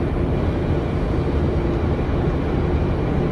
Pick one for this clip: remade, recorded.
recorded